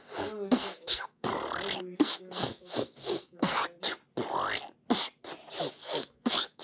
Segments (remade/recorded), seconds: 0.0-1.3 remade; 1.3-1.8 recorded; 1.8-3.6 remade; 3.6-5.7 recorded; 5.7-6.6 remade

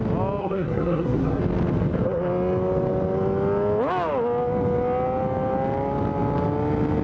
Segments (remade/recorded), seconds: 0.0-0.4 recorded; 0.4-1.4 remade; 1.4-7.0 recorded